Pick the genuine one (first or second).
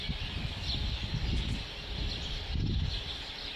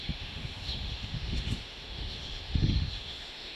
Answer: first